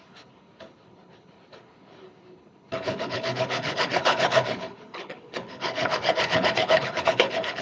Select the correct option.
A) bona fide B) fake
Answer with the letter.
B